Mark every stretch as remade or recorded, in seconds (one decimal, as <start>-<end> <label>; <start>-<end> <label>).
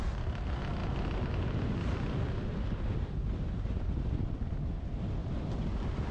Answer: 0.0-6.1 recorded